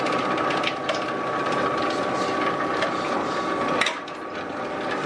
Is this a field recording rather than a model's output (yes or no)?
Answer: yes